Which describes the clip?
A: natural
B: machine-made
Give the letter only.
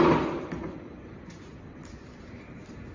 A